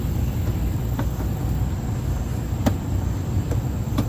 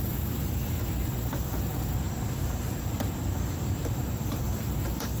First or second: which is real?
first